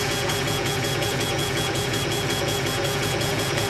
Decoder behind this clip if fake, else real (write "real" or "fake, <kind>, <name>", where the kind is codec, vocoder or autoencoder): fake, vocoder, Vocos